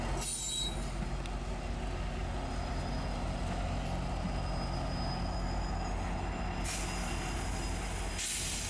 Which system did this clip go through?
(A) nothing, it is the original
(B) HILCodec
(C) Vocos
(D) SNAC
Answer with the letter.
A